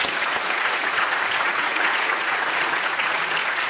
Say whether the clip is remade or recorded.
remade